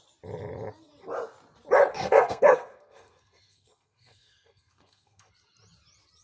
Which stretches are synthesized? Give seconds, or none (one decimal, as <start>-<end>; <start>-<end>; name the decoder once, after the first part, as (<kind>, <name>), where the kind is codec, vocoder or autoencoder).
1.9-5.3 (codec, SNAC)